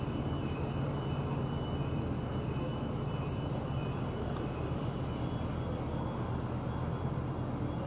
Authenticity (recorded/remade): recorded